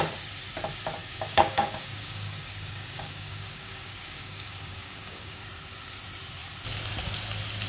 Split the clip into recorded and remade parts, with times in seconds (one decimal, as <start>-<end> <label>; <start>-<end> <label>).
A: 0.0-1.0 recorded; 1.0-5.4 remade; 5.4-7.7 recorded